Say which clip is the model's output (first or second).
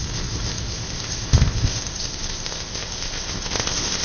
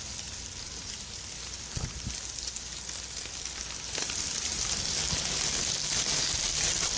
first